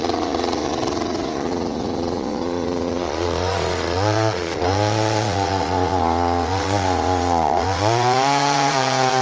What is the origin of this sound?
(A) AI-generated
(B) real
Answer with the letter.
A